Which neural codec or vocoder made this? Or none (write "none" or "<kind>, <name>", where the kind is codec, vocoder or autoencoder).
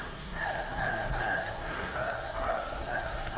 codec, SNAC